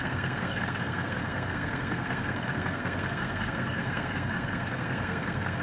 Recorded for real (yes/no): no